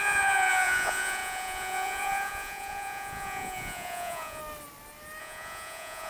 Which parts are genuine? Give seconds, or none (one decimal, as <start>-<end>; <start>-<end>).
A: 4.4-5.2